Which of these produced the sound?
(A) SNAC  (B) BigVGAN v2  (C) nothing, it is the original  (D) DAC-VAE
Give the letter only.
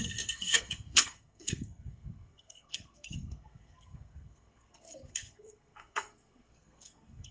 A